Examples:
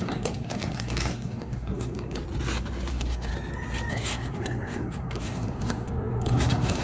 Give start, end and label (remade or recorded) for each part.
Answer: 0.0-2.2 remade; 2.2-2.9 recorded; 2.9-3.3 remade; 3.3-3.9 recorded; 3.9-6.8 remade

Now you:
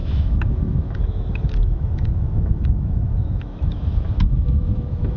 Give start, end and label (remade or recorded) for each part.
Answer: 0.0-5.2 remade

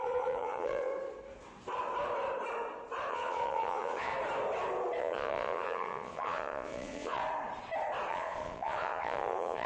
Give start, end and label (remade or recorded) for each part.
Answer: 0.0-0.9 remade; 0.9-3.1 recorded; 3.1-4.1 remade; 4.1-5.0 recorded; 5.0-7.2 remade; 7.2-8.1 recorded; 8.1-9.7 remade

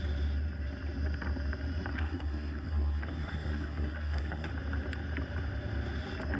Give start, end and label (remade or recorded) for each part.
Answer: 0.0-1.9 recorded; 1.9-4.5 remade; 4.5-6.4 recorded

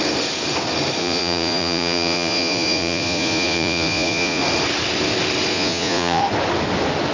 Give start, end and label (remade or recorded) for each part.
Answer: 0.0-1.0 recorded; 1.0-4.4 remade; 4.4-5.5 recorded; 5.5-6.2 remade; 6.2-7.1 recorded